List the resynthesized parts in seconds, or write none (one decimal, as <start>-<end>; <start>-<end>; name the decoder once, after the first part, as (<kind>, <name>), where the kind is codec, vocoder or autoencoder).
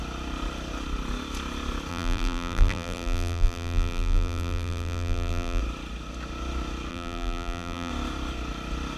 1.9-5.6 (vocoder, BigVGAN v2); 6.9-7.9